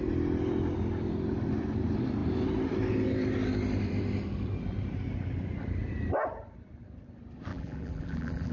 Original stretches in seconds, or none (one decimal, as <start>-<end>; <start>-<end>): 0.0-7.5